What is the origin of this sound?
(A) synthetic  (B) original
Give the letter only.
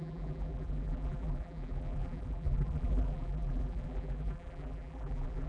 A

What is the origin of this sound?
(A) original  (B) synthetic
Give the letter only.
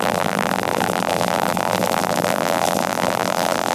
B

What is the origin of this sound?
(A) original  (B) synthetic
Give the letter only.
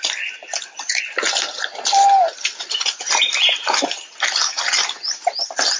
A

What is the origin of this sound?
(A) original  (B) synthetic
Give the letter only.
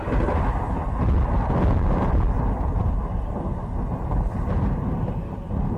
B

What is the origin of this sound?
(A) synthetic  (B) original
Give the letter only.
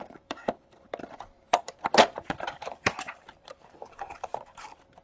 A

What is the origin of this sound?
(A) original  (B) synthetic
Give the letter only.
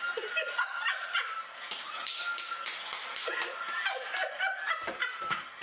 B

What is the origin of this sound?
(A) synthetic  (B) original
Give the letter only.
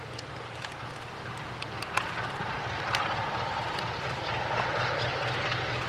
B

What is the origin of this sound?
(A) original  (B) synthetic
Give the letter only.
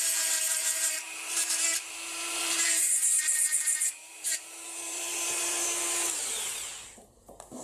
B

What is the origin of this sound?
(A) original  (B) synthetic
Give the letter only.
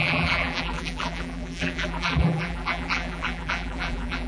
B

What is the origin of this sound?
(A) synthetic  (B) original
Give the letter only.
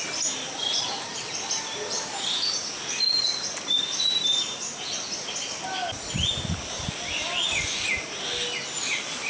B